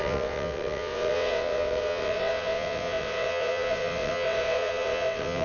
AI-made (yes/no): yes